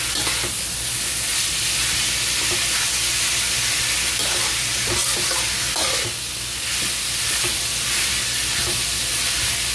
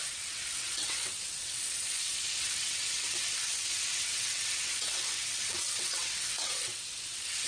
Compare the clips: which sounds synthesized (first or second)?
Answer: second